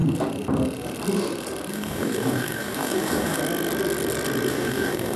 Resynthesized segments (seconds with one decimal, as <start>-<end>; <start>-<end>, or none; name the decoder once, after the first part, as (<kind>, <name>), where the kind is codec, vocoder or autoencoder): 1.7-3.4 (codec, DAC); 4.5-5.2